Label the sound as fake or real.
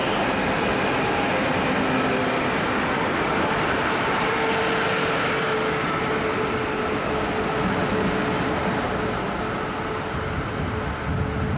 real